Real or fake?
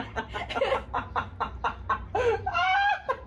real